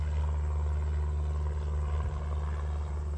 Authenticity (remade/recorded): recorded